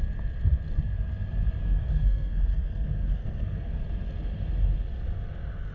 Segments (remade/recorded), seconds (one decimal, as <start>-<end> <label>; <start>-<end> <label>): 0.0-1.6 recorded; 1.6-3.8 remade; 3.8-5.7 recorded